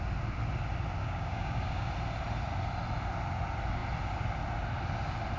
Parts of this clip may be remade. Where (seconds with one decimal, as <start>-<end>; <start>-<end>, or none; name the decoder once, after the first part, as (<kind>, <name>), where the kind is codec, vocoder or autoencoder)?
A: 1.0-1.9 (codec, DAC)